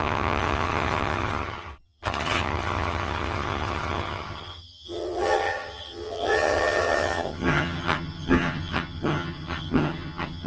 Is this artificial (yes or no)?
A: yes